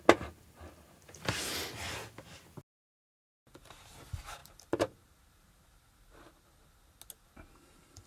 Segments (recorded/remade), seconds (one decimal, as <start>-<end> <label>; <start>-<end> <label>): 0.0-4.4 recorded; 4.4-5.8 remade; 5.8-8.1 recorded